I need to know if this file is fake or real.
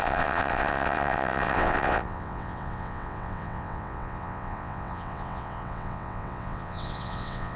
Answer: fake